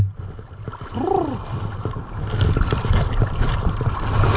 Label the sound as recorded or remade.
recorded